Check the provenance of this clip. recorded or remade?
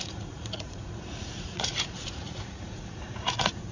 remade